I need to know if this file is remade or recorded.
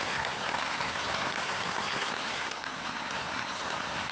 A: remade